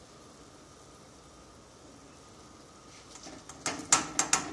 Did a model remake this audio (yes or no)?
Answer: no